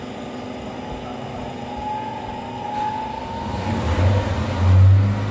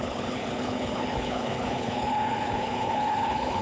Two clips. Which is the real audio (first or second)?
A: first